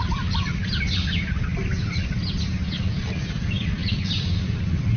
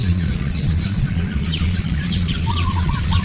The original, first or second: first